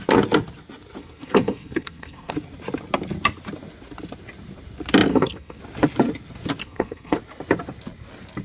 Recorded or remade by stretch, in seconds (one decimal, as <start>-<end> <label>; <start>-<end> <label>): 0.0-1.0 recorded; 1.0-2.3 remade; 2.3-5.1 recorded; 5.1-5.6 remade; 5.6-6.6 recorded; 6.6-7.2 remade; 7.2-8.4 recorded